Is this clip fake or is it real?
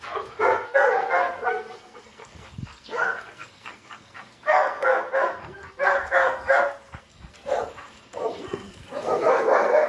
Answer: fake